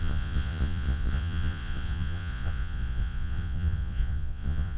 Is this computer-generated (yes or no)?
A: yes